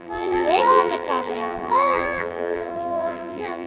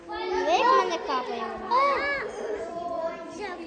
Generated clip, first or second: first